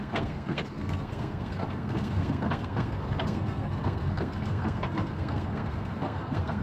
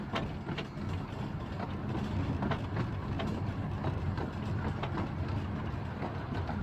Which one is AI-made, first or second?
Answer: first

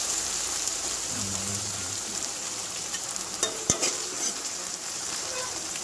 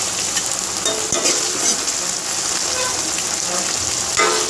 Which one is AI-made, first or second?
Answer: first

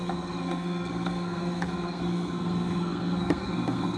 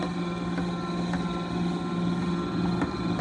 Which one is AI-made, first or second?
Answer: first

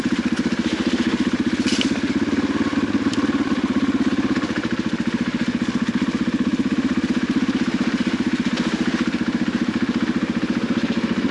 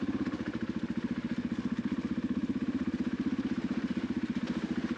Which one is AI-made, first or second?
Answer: second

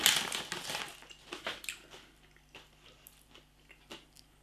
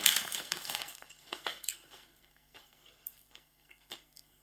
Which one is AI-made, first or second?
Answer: second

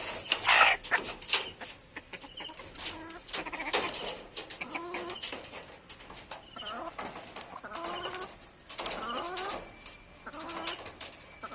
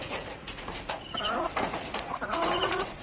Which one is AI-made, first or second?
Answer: second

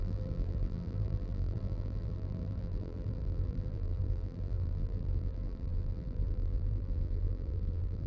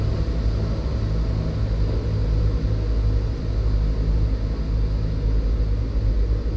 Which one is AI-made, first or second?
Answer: first